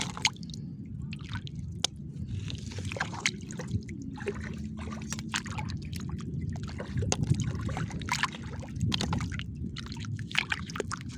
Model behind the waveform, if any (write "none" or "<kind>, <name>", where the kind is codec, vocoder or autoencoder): none